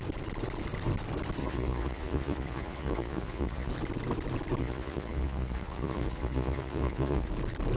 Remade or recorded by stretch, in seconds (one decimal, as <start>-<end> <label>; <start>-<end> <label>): 0.0-1.4 recorded; 1.4-3.7 remade; 3.7-4.6 recorded; 4.6-7.3 remade; 7.3-7.8 recorded